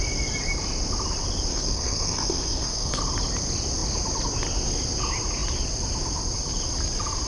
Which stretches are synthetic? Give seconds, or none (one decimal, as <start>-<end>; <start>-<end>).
1.5-3.0